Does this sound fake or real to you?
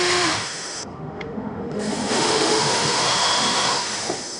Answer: fake